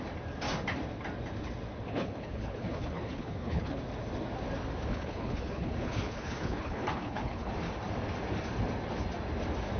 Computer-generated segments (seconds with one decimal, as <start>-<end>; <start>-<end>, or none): 1.9-3.8; 4.9-7.5